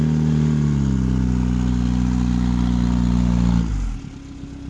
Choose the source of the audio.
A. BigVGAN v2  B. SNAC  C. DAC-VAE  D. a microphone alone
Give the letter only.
D